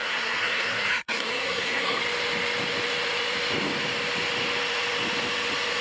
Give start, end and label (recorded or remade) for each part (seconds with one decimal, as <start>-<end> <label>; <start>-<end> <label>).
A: 0.0-2.0 remade; 2.0-5.8 recorded